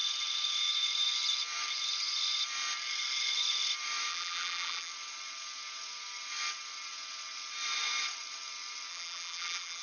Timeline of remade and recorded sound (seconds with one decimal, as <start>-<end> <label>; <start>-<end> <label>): 0.0-4.1 recorded; 4.1-4.9 remade; 4.9-8.9 recorded; 8.9-9.8 remade